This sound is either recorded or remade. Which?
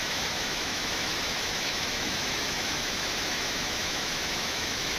remade